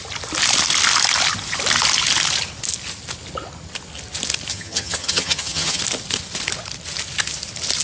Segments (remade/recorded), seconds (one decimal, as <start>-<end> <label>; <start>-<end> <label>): 0.0-4.5 recorded; 4.5-5.8 remade; 5.8-7.8 recorded